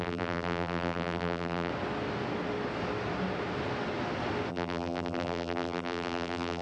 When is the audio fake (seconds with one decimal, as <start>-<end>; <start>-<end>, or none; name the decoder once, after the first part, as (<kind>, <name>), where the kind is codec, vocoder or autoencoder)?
0.0-1.7 (vocoder, BigVGAN v2); 4.5-6.6